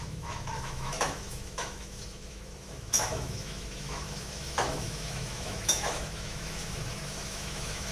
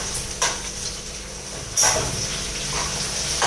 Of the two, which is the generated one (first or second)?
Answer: first